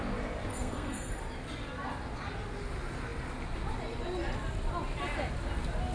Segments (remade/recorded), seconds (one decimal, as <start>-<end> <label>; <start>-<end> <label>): 0.0-0.5 recorded; 0.5-1.1 remade; 1.1-5.9 recorded